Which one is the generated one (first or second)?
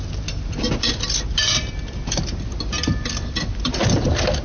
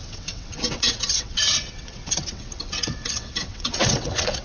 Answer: second